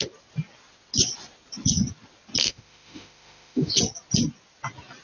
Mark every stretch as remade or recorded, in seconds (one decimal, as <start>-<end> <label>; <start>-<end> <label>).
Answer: 0.0-2.4 recorded; 2.4-3.7 remade; 3.7-5.0 recorded